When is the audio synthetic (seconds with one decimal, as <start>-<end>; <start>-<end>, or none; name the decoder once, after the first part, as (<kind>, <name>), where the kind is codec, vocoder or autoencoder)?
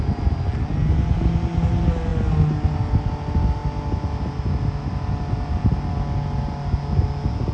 none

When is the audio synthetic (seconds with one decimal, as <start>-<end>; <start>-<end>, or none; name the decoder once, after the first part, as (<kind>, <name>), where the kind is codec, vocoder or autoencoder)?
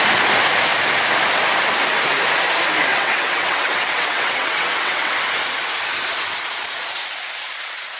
2.9-5.1 (vocoder, WaveNeXt)